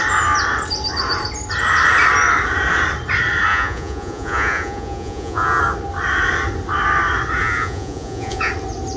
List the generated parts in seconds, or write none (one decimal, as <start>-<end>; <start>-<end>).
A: 3.5-5.6; 7.4-8.5